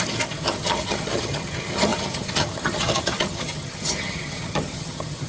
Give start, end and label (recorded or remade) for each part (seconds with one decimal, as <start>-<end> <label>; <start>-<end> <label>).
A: 0.0-5.3 remade